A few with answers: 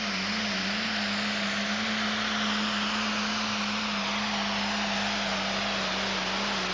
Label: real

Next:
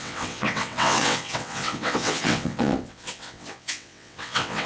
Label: fake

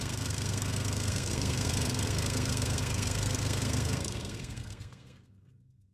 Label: fake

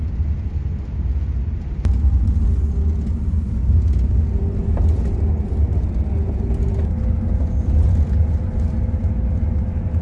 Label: real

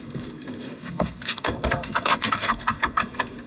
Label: fake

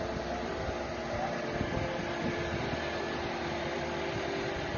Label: real